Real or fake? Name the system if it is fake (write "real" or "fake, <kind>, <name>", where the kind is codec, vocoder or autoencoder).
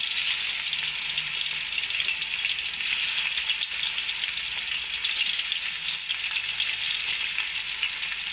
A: real